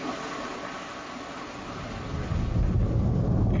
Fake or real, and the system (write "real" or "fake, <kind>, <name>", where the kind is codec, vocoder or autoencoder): real